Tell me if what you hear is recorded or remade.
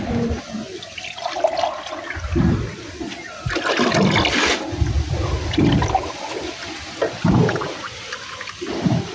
recorded